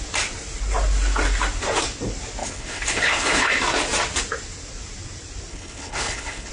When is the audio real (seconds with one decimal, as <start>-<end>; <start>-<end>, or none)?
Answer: 0.0-2.4; 3.5-5.5